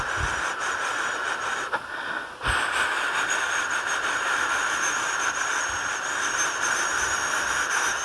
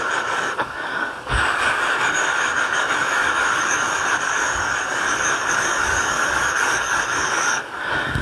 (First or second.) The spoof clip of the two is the second